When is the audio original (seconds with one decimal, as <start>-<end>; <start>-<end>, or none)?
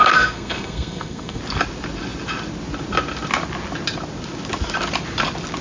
1.4-5.6